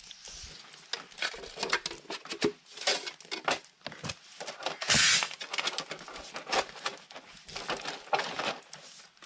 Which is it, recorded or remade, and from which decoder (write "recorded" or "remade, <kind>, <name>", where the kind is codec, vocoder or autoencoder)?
recorded